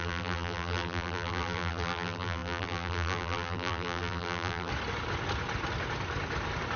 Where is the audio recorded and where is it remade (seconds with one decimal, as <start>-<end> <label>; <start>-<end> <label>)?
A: 0.0-4.7 remade; 4.7-6.8 recorded